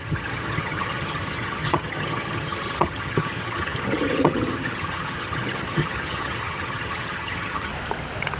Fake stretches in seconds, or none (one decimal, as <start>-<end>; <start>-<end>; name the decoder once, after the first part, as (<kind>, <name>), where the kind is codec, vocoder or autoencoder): 0.0-7.7 (vocoder, HiFi-GAN)